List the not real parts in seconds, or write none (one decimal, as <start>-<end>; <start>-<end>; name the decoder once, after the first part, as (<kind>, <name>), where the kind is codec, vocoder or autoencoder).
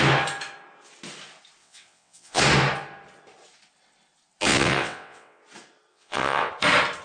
1.6-2.4 (vocoder, WaveNeXt); 4.5-5.4; 5.9-6.5